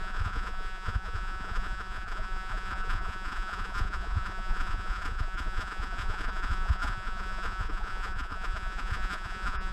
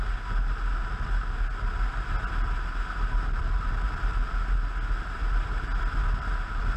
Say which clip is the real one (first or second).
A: second